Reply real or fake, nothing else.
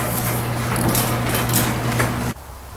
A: real